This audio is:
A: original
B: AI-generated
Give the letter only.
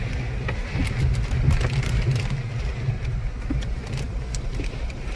A